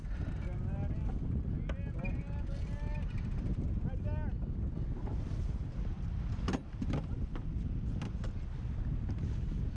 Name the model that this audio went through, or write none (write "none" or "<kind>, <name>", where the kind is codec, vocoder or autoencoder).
none